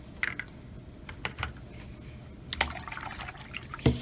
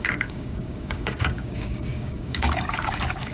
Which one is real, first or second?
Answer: first